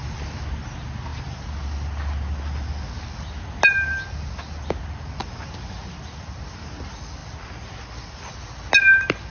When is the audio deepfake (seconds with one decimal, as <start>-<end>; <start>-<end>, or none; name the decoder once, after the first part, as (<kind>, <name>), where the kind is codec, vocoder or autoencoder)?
none